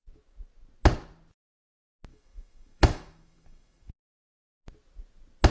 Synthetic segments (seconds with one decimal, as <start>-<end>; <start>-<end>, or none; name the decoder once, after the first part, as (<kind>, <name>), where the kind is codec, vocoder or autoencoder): 2.1-3.9 (autoencoder, DAC-VAE)